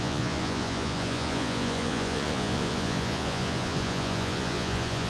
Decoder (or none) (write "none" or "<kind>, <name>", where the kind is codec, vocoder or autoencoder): vocoder, Vocos